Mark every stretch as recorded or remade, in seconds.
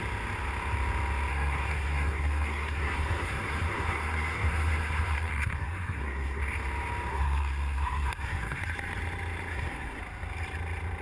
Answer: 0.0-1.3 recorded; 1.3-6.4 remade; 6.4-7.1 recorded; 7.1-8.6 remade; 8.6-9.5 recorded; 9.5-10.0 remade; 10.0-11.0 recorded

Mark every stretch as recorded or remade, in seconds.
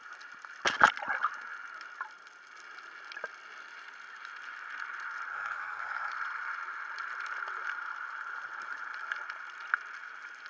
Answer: 0.0-5.3 recorded; 5.3-6.1 remade; 6.1-10.5 recorded